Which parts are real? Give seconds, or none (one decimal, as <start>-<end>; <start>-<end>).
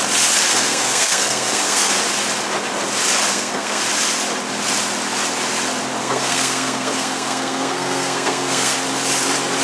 0.0-0.5; 1.9-3.3; 3.8-6.0; 8.7-9.6